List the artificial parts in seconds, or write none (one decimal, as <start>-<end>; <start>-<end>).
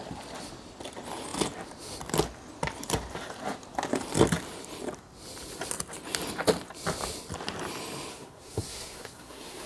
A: 8.1-9.7